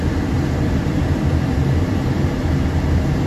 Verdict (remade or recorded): remade